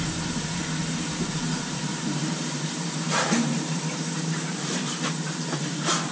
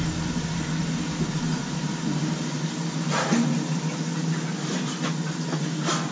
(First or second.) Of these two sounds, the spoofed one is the first